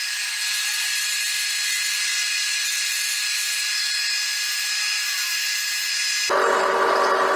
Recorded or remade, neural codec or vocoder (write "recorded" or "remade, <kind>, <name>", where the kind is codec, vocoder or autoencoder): recorded